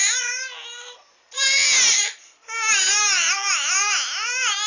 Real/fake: real